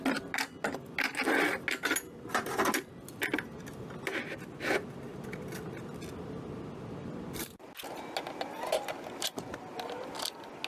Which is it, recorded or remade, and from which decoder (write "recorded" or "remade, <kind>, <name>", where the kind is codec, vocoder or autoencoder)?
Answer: recorded